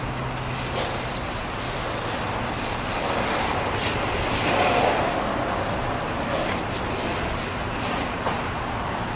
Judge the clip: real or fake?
real